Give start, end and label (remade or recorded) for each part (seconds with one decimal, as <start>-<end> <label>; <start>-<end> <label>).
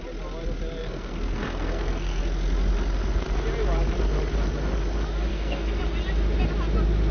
0.0-0.8 recorded; 0.8-2.2 remade; 2.2-5.3 recorded; 5.3-5.8 remade; 5.8-7.1 recorded